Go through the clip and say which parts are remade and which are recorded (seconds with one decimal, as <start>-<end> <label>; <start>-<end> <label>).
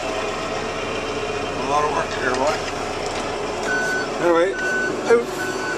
0.0-5.8 recorded